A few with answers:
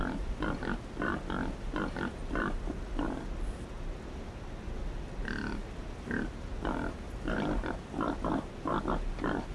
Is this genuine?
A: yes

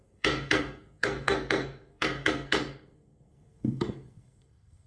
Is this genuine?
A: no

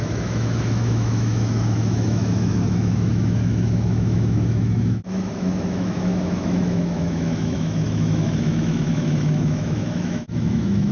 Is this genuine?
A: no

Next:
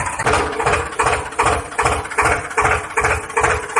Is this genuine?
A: no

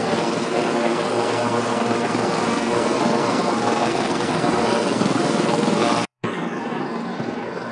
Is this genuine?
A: no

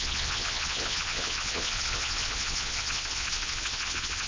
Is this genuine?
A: no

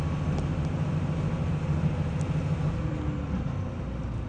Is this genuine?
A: yes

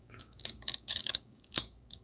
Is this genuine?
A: no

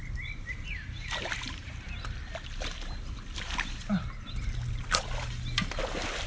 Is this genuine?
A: yes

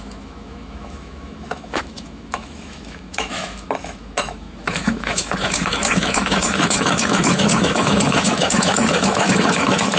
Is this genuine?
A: no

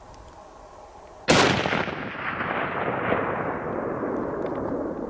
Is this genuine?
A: yes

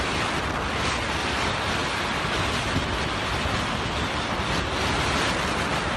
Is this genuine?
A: yes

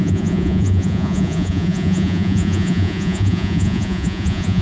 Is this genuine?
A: no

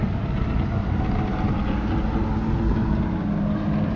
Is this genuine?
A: yes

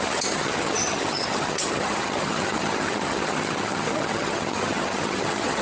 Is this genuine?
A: no